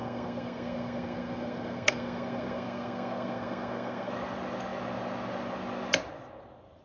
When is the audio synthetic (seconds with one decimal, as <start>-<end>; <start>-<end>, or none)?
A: 0.0-4.1